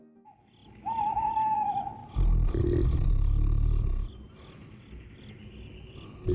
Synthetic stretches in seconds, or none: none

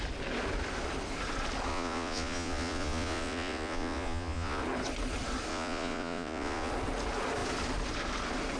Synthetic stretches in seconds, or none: 1.7-4.6 (vocoder, Vocos); 5.5-6.7

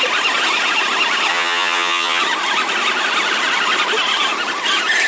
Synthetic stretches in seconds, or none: 1.3-2.2 (vocoder, HiFi-GAN)

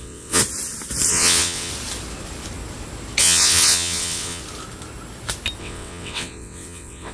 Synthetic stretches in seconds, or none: 0.0-0.4 (vocoder, WaveNeXt); 1.1-1.7; 3.2-4.4; 5.6-7.1

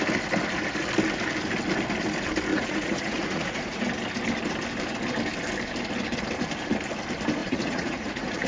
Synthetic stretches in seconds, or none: 2.5-3.8 (vocoder, Vocos); 7.4-8.5

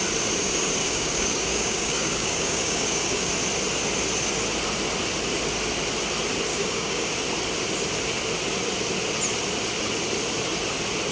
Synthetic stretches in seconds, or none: 0.8-3.3 (codec, DAC); 6.5-7.1

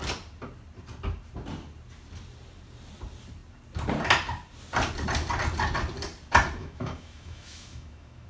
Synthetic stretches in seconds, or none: 6.6-8.3 (autoencoder, DAC-VAE)

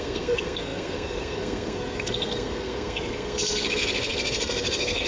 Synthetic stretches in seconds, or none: 0.0-5.1 (codec, SNAC)